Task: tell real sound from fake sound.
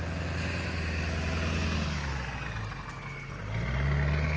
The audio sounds real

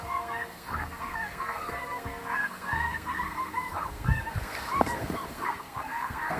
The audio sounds fake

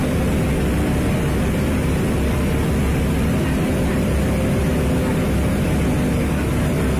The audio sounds real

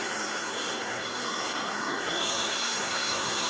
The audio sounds fake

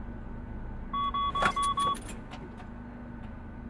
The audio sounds real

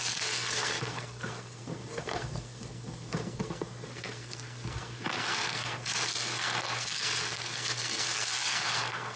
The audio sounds fake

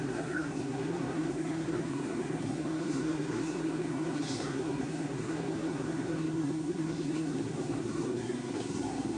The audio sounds fake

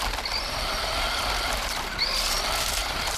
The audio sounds real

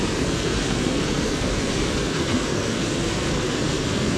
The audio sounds fake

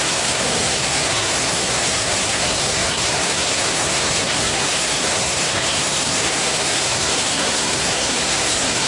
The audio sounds fake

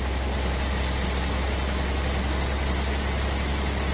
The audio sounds real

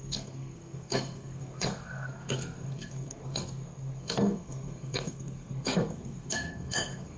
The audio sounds fake